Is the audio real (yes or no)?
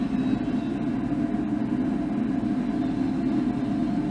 yes